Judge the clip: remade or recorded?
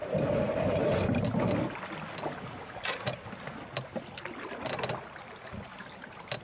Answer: recorded